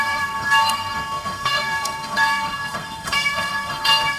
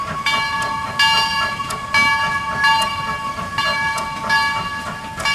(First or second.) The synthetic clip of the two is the first